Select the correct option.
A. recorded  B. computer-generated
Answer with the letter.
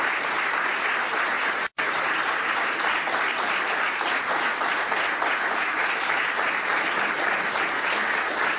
A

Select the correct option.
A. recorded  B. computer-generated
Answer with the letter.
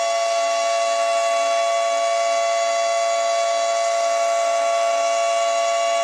B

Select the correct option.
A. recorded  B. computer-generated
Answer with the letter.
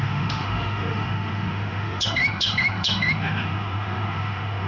B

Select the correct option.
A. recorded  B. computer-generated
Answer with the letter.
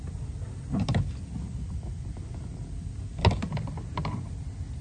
A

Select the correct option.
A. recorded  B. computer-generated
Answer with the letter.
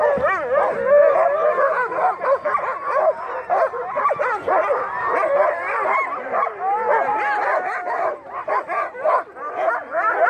A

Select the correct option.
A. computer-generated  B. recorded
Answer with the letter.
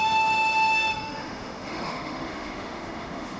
A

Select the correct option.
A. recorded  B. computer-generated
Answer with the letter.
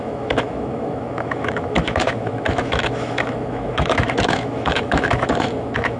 B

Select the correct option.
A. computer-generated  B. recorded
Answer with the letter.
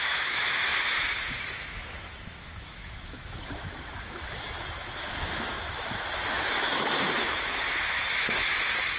A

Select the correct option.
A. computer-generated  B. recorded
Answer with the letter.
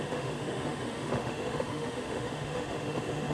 A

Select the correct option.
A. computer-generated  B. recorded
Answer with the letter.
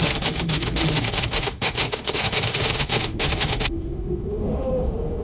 A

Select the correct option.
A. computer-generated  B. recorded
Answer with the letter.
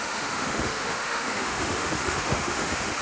A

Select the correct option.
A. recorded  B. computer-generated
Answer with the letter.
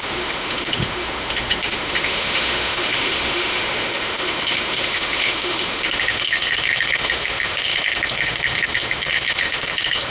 B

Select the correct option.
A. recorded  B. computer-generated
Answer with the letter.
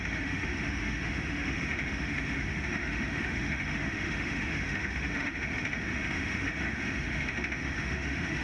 B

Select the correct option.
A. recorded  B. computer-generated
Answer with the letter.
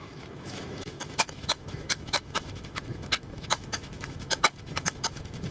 B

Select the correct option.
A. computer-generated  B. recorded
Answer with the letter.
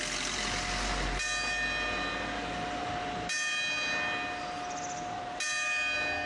B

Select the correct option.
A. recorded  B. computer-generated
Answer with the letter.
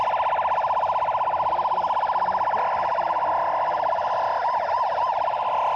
A